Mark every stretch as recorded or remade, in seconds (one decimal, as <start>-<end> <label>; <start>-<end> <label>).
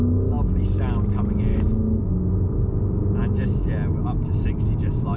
0.0-1.5 recorded; 1.5-2.1 remade; 2.1-5.2 recorded